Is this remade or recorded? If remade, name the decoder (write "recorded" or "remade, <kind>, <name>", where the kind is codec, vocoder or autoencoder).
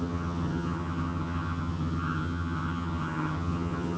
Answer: remade, vocoder, HiFi-GAN